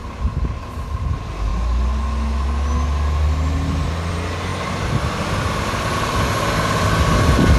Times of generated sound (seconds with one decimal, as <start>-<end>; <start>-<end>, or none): none